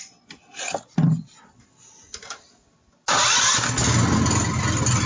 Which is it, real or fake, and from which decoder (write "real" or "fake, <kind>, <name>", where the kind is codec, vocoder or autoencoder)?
real